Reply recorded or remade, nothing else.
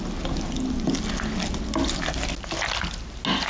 recorded